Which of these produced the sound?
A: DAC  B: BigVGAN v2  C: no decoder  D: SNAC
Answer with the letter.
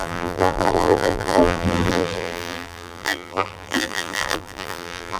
B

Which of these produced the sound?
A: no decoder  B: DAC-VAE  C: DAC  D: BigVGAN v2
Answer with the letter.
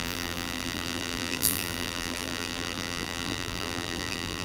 D